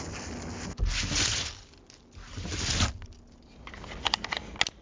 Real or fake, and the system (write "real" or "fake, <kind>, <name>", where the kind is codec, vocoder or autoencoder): real